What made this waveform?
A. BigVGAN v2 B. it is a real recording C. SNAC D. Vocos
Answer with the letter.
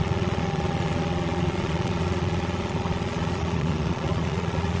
D